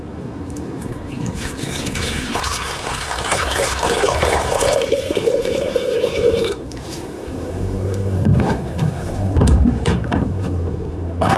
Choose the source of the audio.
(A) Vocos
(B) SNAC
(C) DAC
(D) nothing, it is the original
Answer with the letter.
B